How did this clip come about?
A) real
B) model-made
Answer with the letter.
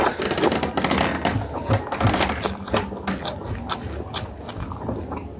A